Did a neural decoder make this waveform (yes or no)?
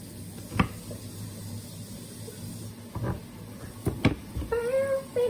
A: no